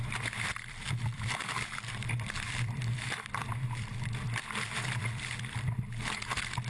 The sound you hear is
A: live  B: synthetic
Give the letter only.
B